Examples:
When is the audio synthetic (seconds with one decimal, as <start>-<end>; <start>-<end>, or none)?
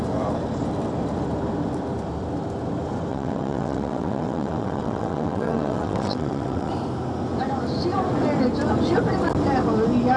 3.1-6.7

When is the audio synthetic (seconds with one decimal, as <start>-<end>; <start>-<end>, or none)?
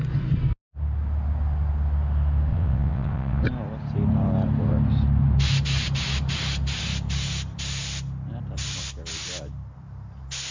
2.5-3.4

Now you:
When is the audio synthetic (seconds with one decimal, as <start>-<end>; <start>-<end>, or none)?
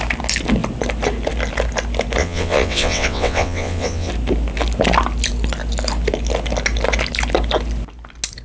2.2-4.1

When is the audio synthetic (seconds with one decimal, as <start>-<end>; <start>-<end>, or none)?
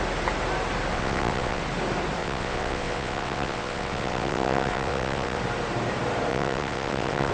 0.9-1.6; 2.2-5.4; 6.3-7.3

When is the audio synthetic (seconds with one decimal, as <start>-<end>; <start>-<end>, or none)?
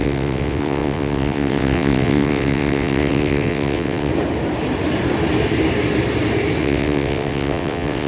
0.0-4.1; 6.6-8.1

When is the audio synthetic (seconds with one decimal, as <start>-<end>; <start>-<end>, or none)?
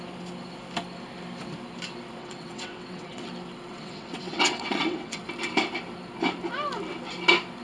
2.2-3.3; 3.7-5.2